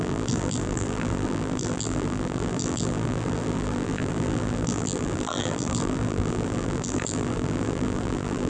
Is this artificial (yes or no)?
yes